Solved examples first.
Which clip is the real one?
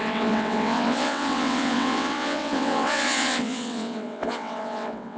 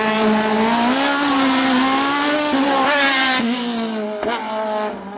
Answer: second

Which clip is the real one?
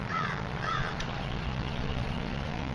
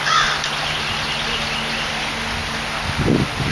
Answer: second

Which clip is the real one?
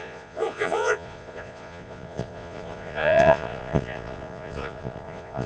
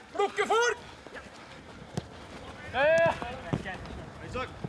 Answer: second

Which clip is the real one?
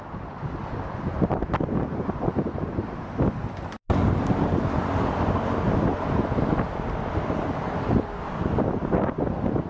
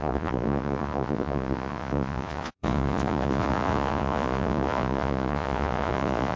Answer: first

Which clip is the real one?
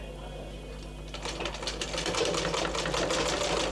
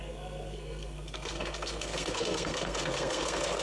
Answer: first